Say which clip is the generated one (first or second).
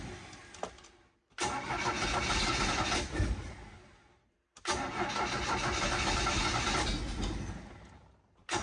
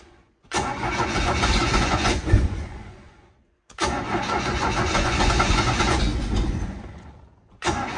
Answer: second